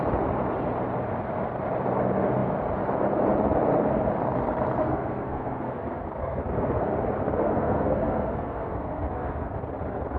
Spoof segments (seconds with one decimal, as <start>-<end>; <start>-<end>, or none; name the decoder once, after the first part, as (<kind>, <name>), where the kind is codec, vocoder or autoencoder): 4.8-6.9 (codec, SNAC); 7.4-9.6